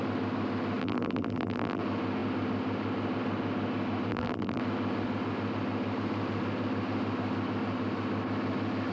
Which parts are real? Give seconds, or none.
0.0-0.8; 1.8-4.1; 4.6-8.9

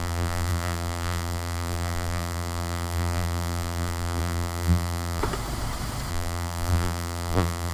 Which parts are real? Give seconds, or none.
5.2-6.1